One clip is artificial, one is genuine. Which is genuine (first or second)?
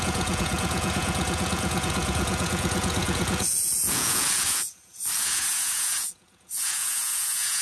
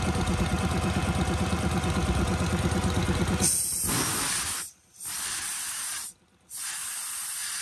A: second